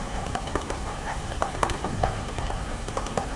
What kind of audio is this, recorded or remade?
remade